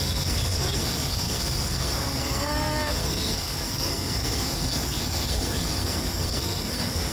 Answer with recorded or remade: remade